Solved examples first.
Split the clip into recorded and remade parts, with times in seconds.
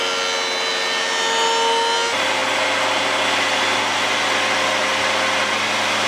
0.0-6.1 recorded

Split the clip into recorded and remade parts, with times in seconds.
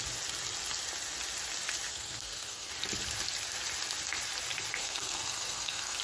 0.0-1.9 recorded; 1.9-2.7 remade; 2.7-4.8 recorded; 4.8-6.0 remade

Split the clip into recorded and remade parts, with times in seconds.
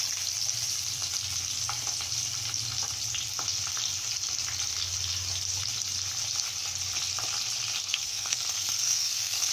0.0-7.8 recorded; 7.8-9.5 remade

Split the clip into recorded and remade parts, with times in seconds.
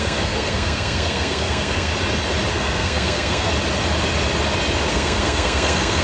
0.0-1.9 remade; 1.9-2.5 recorded; 2.5-3.5 remade; 3.5-4.9 recorded; 4.9-6.0 remade